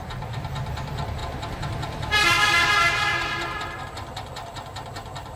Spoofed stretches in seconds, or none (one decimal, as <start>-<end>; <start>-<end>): none